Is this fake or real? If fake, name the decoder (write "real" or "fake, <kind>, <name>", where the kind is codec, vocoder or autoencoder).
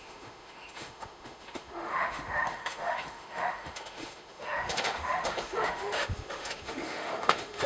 fake, autoencoder, DAC-VAE